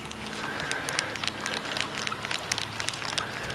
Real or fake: real